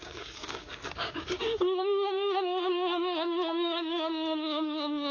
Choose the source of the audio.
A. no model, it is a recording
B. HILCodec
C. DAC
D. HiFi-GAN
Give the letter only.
C